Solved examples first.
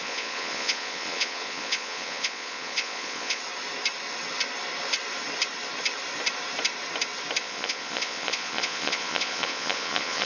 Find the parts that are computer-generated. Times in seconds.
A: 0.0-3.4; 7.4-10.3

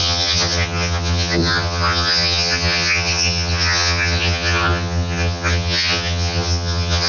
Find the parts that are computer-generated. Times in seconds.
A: 0.0-7.1

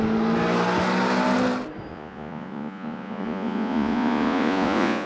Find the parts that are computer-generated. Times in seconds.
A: 1.9-5.1